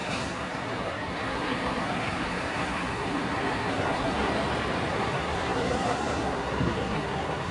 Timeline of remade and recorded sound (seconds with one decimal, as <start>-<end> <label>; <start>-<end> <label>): 0.0-4.3 remade; 4.3-4.9 recorded; 4.9-7.5 remade